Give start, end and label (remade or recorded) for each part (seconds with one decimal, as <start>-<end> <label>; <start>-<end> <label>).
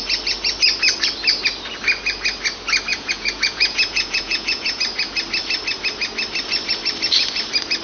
0.0-2.9 recorded; 2.9-4.8 remade; 4.8-7.8 recorded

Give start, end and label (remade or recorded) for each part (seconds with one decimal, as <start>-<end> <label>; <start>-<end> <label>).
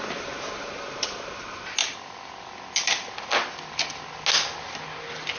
0.0-5.4 recorded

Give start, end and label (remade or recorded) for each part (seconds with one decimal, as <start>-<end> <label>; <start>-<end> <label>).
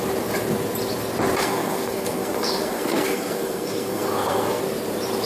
0.0-1.4 recorded; 1.4-4.6 remade; 4.6-5.3 recorded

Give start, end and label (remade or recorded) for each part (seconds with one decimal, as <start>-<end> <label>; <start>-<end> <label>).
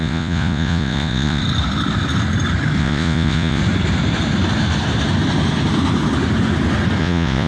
0.0-1.4 remade; 1.4-2.8 recorded; 2.8-3.6 remade; 3.6-7.0 recorded; 7.0-7.5 remade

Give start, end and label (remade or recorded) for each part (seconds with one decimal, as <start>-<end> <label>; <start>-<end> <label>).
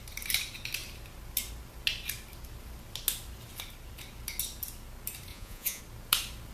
0.0-5.3 recorded; 5.3-5.8 remade; 5.8-6.5 recorded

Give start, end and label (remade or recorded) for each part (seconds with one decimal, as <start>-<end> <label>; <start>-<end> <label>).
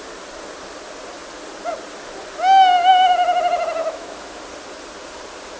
0.0-3.8 recorded; 3.8-4.4 remade; 4.4-5.6 recorded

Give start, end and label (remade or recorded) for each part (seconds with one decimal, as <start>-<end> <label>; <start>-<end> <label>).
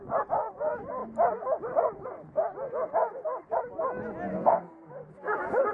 0.0-4.3 recorded; 4.3-4.9 remade; 4.9-5.7 recorded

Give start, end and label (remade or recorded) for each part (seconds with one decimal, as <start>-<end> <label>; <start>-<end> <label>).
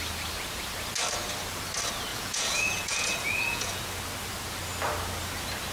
0.0-2.1 recorded; 2.1-3.8 remade; 3.8-5.7 recorded